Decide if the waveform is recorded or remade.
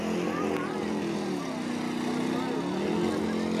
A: recorded